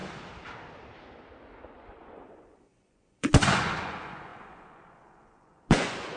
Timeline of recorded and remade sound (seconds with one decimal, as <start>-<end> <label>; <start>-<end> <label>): 0.0-1.7 recorded; 1.7-6.2 remade